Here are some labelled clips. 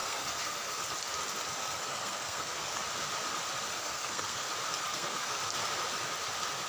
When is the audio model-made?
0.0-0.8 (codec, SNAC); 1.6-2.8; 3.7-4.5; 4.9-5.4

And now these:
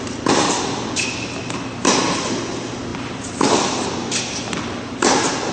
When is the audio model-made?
none

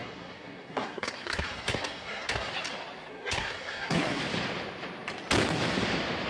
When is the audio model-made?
0.0-2.5 (codec, SNAC); 3.1-4.2

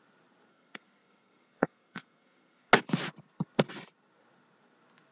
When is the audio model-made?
0.5-2.7 (codec, SNAC)